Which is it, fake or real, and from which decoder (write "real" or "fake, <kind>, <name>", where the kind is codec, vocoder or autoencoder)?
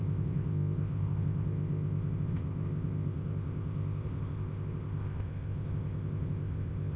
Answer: fake, codec, ZipCodec